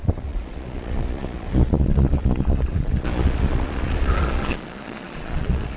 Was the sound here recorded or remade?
remade